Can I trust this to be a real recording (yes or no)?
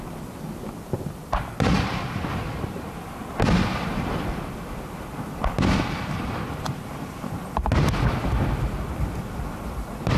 yes